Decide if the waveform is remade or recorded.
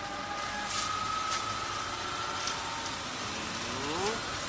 recorded